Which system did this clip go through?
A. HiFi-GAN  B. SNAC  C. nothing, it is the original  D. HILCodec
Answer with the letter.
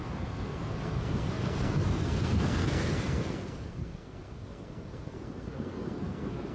B